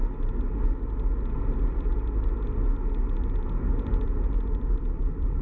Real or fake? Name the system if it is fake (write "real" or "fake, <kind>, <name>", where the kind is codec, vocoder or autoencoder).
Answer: real